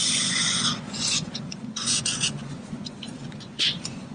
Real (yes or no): no